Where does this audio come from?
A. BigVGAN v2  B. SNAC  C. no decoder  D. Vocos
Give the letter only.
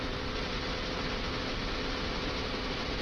C